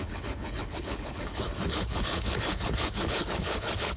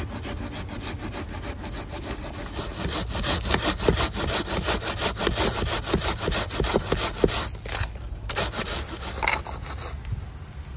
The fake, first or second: first